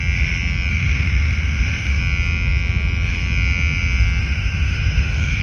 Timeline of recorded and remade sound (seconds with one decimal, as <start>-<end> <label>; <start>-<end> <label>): 0.0-0.7 recorded; 0.7-2.0 remade; 2.0-4.2 recorded; 4.2-5.4 remade

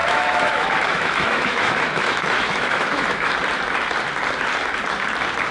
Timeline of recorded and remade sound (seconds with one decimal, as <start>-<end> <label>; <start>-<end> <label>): 0.0-3.3 remade; 3.3-5.5 recorded

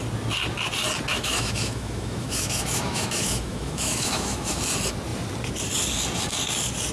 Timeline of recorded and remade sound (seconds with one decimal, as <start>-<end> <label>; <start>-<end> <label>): 0.0-1.1 recorded; 1.1-4.6 remade; 4.6-6.9 recorded

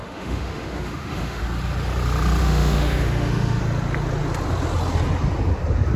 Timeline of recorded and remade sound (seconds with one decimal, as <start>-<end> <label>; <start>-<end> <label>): 0.0-1.4 remade; 1.4-2.4 recorded; 2.4-3.6 remade; 3.6-6.0 recorded

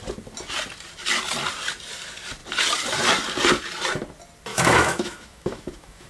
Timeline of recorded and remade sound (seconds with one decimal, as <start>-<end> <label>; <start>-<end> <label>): 0.0-4.5 recorded; 4.5-6.1 remade

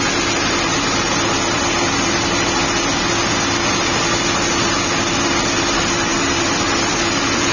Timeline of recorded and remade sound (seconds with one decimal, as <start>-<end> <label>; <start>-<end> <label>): 0.0-7.5 recorded

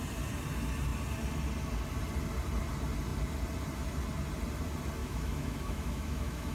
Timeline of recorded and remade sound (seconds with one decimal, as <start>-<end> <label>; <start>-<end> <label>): 0.0-5.0 recorded; 5.0-6.5 remade

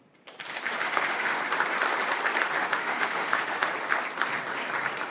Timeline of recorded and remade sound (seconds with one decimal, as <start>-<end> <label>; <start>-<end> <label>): 0.0-0.8 recorded; 0.8-1.4 remade; 1.4-2.6 recorded; 2.6-3.7 remade; 3.7-5.1 recorded